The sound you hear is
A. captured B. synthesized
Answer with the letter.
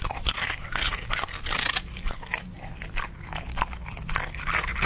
A